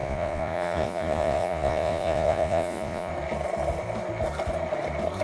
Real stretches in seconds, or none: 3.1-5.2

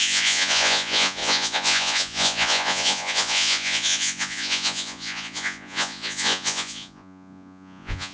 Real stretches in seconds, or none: none

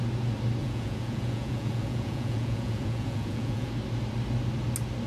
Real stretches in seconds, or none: 0.0-0.6; 3.7-5.1

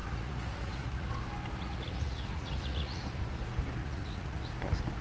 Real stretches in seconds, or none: 1.1-1.6; 3.0-3.8; 4.4-5.0